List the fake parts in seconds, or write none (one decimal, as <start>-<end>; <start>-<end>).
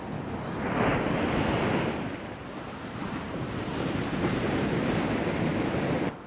3.0-6.3